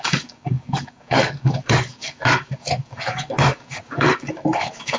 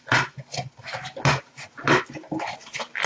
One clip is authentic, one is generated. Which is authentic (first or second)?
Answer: second